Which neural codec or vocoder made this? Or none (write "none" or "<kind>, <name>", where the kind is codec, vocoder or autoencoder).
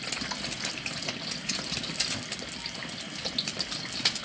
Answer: none